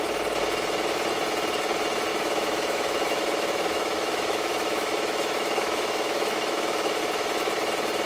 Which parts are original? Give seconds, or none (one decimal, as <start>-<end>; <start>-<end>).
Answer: 0.0-2.1; 7.0-8.1